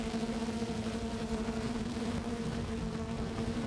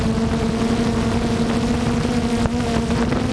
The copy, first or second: first